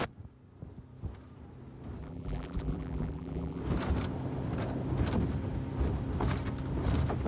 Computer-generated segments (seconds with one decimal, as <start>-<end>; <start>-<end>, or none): 2.0-3.6